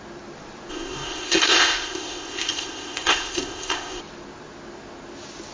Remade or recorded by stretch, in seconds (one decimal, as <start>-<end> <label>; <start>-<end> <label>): 0.0-0.7 recorded; 0.7-4.0 remade; 4.0-5.5 recorded